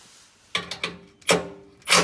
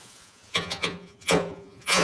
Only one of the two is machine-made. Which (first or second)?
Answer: second